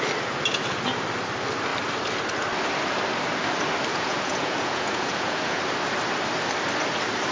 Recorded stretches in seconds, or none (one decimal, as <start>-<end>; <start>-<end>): 0.0-3.9; 5.6-7.3